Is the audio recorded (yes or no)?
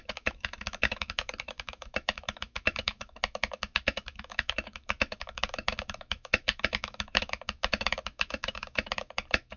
no